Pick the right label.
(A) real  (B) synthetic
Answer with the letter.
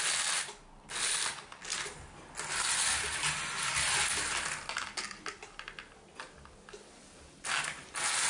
A